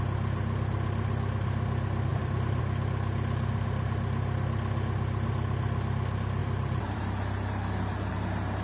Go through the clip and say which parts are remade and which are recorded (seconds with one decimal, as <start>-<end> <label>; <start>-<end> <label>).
0.0-2.1 recorded; 2.1-2.6 remade; 2.6-6.4 recorded; 6.4-8.1 remade; 8.1-8.6 recorded